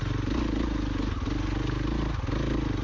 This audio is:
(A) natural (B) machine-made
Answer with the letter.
A